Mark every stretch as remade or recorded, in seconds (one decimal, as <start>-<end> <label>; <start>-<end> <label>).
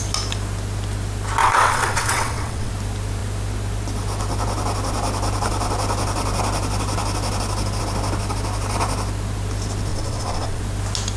0.0-1.4 recorded; 1.4-2.7 remade; 2.7-9.9 recorded; 9.9-10.6 remade; 10.6-11.2 recorded